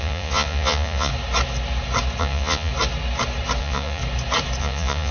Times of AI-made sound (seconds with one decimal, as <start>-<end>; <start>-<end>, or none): 0.0-1.1; 2.2-2.7; 3.6-4.0; 4.6-5.1